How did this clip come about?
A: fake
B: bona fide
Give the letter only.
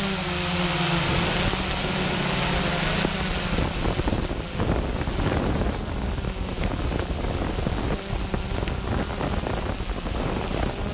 B